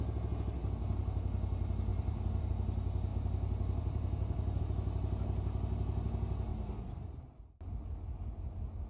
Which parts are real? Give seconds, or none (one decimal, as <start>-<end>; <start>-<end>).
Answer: 0.0-1.9; 2.5-3.1; 4.6-8.9